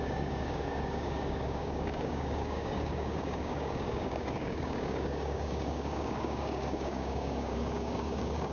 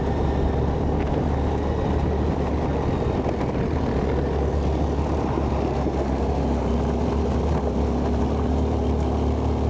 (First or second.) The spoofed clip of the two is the first